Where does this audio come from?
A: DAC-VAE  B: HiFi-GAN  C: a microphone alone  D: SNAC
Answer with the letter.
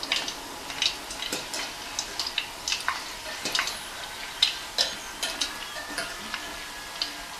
C